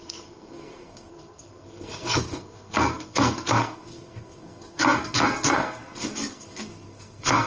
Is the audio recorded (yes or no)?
no